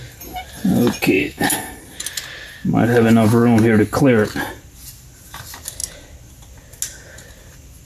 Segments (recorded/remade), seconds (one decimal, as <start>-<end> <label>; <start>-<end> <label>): 0.0-1.2 recorded; 1.2-1.8 remade; 1.8-7.9 recorded